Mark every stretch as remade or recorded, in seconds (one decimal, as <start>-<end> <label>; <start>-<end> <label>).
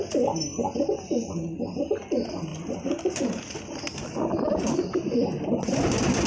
0.0-4.5 recorded; 4.5-5.7 remade; 5.7-6.3 recorded